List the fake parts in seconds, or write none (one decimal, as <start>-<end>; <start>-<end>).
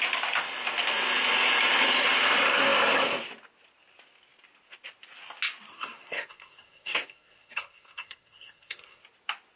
5.7-9.0